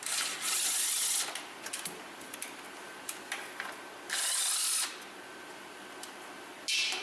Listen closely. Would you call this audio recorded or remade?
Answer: recorded